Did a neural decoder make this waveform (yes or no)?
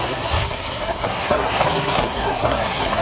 yes